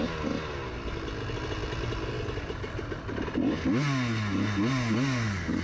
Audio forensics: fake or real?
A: real